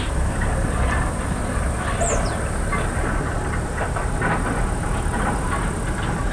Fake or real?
real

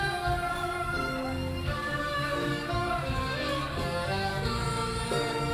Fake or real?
fake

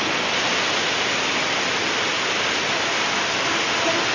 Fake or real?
real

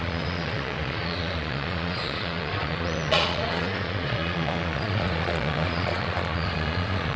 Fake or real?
fake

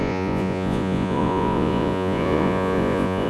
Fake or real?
fake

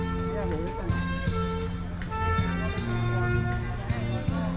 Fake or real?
real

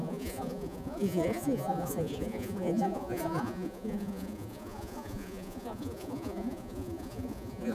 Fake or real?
fake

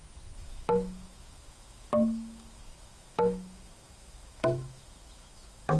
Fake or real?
fake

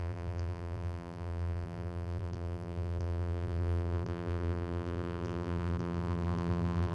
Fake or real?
fake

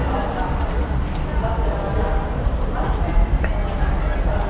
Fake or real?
real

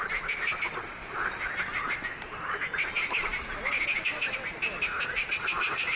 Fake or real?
real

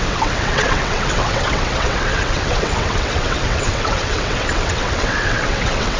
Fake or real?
fake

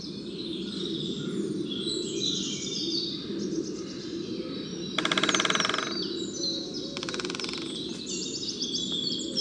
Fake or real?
real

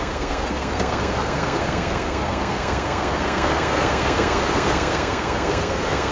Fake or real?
fake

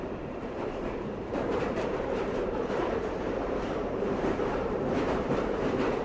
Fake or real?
fake